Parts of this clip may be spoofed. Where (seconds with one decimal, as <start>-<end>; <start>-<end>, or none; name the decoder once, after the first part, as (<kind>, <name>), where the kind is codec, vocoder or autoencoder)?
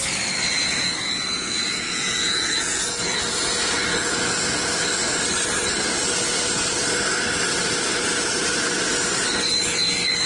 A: 0.6-4.7 (vocoder, Vocos)